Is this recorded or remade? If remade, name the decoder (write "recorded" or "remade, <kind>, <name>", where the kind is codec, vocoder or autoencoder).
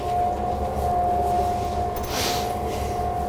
recorded